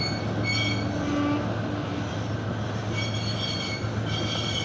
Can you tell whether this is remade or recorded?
recorded